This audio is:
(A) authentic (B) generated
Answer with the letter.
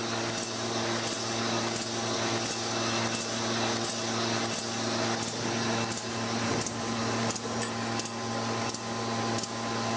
A